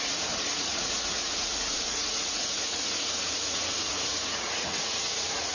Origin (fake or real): fake